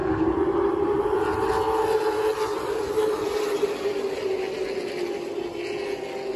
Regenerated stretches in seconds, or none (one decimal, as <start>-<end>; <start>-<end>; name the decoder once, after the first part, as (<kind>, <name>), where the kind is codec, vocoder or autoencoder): none